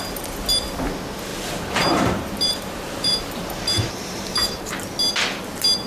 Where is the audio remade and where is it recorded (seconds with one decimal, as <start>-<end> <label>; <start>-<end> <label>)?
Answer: 0.0-1.3 recorded; 1.3-4.8 remade; 4.8-5.9 recorded